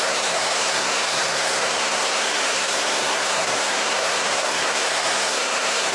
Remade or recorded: remade